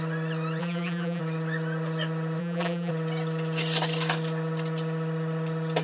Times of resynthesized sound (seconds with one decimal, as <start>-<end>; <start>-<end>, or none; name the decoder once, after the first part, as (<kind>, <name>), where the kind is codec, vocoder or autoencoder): 0.6-1.2 (vocoder, BigVGAN v2); 2.4-2.9